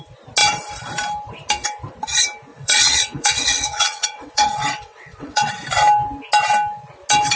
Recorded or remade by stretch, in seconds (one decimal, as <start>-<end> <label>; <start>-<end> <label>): 0.0-2.5 recorded; 2.5-5.5 remade; 5.5-7.4 recorded

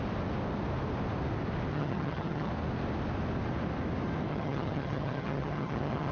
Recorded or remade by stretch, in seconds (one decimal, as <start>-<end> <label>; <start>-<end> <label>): 0.0-1.7 recorded; 1.7-2.5 remade; 2.5-4.3 recorded; 4.3-6.1 remade

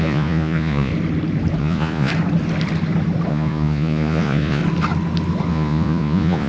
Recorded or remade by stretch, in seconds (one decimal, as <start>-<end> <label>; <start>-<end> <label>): 0.0-0.9 remade; 0.9-1.6 recorded; 1.6-2.1 remade; 2.1-3.3 recorded; 3.3-4.6 remade; 4.6-5.5 recorded; 5.5-6.5 remade

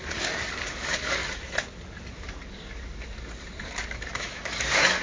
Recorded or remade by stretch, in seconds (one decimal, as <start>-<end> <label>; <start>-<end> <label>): 0.0-1.2 remade; 1.2-2.1 recorded; 2.1-5.0 remade